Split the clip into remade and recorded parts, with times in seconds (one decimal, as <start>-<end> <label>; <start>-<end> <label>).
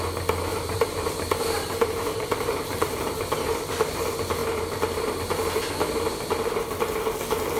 0.0-0.5 recorded; 0.5-3.5 remade; 3.5-4.4 recorded; 4.4-5.2 remade; 5.2-7.6 recorded